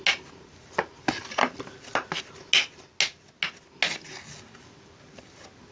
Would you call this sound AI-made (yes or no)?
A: no